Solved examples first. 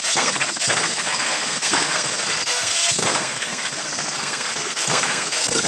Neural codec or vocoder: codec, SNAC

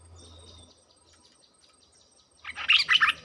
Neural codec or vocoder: none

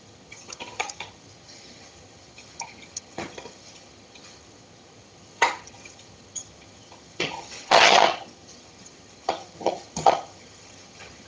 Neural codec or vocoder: vocoder, HiFi-GAN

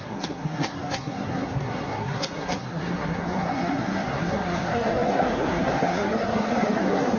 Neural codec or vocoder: codec, SNAC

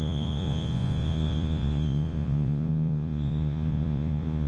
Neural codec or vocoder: vocoder, Vocos